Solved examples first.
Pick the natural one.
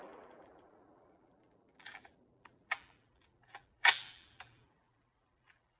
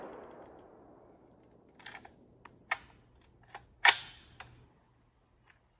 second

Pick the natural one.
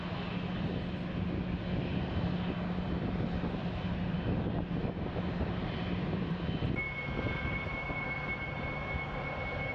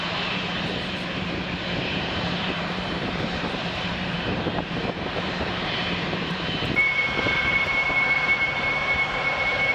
first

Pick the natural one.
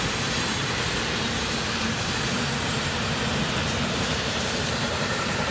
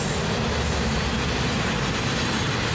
second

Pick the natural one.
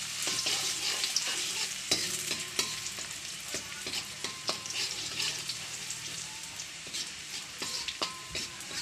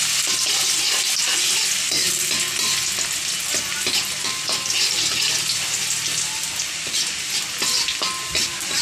second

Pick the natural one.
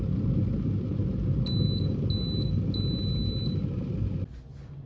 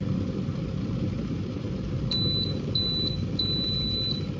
first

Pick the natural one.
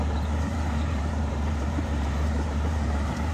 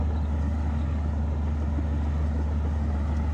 second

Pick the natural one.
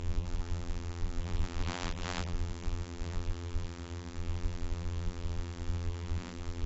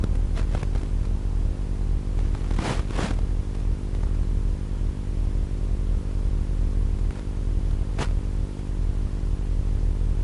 second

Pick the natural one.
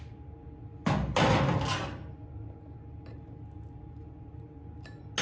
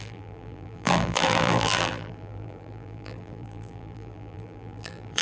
first